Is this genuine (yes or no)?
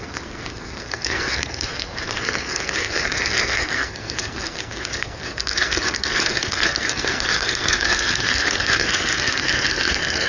no